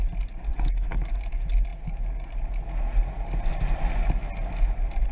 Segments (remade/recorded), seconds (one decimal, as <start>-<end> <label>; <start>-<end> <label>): 0.0-0.5 recorded; 0.5-1.1 remade; 1.1-5.1 recorded

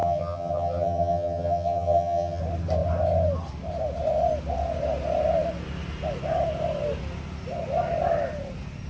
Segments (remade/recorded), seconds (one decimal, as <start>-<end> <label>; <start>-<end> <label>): 0.0-2.4 remade; 2.4-8.9 recorded

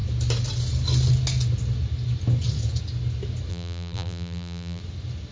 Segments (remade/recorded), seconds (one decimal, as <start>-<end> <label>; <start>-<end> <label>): 0.0-3.5 recorded; 3.5-4.8 remade; 4.8-5.3 recorded

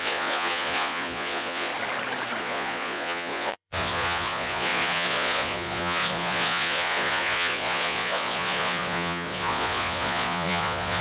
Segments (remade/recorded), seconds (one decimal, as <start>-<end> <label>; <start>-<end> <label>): 0.0-1.7 remade; 1.7-2.4 recorded; 2.4-11.0 remade

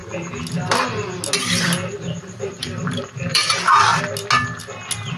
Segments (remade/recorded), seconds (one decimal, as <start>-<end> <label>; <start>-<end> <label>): 0.0-1.9 recorded; 1.9-3.5 remade; 3.5-5.2 recorded

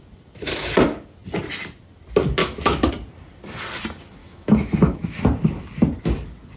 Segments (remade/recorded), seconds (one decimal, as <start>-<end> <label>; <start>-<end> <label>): 0.0-2.4 recorded; 2.4-2.9 remade; 2.9-4.2 recorded; 4.2-5.2 remade; 5.2-6.6 recorded

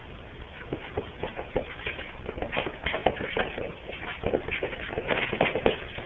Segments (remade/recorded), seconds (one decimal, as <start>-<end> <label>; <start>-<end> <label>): 0.0-6.1 recorded